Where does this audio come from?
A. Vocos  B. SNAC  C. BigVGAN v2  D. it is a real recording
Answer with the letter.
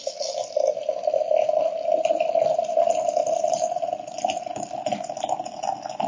D